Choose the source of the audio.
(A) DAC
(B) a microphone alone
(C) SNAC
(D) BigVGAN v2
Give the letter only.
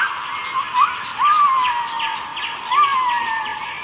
B